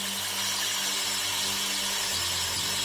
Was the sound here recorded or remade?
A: recorded